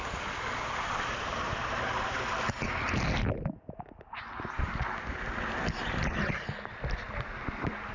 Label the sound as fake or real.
real